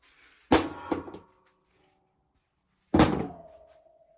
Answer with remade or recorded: recorded